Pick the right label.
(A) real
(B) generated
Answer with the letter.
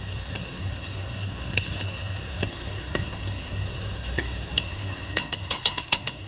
B